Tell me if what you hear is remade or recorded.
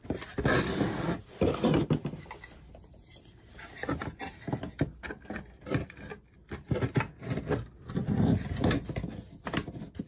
recorded